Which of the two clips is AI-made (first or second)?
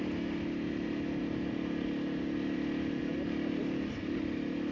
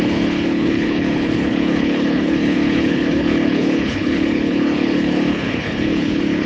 second